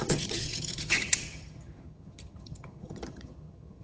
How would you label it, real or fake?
fake